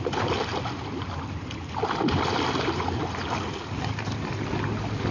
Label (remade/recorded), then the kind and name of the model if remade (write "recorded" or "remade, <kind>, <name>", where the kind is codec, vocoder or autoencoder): recorded